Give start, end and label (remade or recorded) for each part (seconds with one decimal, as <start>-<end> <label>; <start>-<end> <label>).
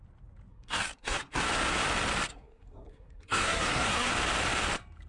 0.0-0.5 recorded; 0.5-1.4 remade; 1.4-2.3 recorded; 2.3-4.1 remade; 4.1-5.1 recorded